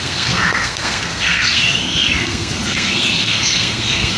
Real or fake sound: fake